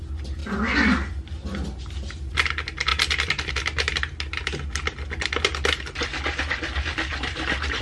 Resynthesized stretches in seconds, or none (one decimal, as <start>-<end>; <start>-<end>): 7.1-7.8